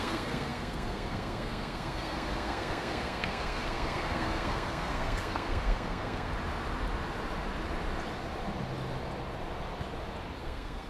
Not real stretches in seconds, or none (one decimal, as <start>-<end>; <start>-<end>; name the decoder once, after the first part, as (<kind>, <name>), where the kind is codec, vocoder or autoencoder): 0.0-6.3 (codec, SNAC); 10.4-10.9